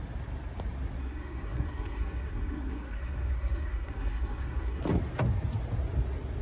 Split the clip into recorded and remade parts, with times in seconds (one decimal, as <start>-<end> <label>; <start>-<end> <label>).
0.0-1.0 recorded; 1.0-4.8 remade; 4.8-6.4 recorded